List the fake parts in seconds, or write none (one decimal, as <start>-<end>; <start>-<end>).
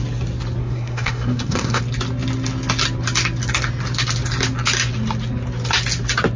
0.6-1.8